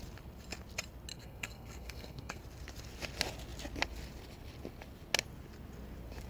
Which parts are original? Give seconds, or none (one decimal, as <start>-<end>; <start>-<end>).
0.0-1.1; 2.4-6.3